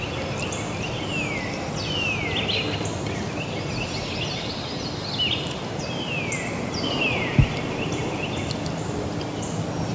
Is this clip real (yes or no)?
yes